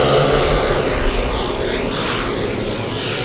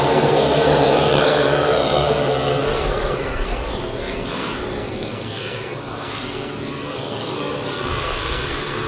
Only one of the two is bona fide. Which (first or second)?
first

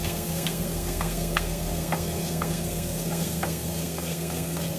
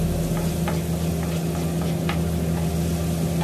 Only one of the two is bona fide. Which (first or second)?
second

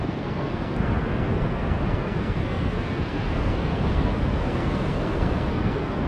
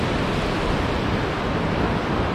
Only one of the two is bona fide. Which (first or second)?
second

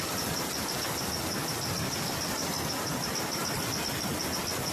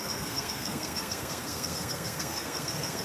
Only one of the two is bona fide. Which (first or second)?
first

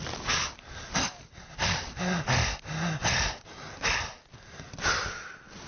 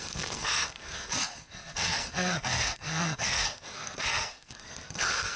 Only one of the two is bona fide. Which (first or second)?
first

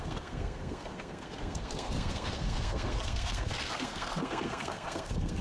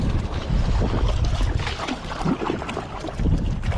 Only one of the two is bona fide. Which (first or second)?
second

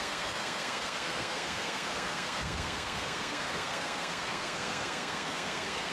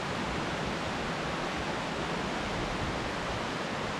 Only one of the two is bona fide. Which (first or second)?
second